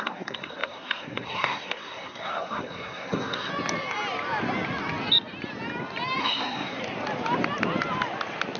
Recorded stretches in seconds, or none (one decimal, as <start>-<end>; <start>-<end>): 3.5-6.2; 6.8-8.6